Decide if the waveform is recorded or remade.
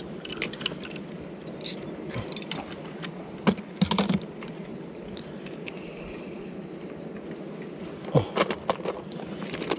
recorded